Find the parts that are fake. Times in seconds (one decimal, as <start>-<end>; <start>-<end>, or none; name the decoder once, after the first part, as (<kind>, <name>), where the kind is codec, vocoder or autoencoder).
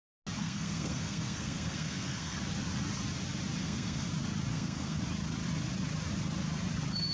0.4-2.4 (codec, SNAC); 3.6-4.1; 4.5-5.0